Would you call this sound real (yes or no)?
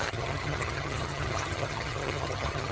no